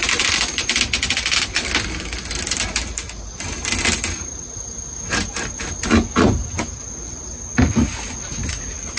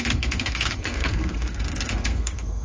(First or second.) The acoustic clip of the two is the first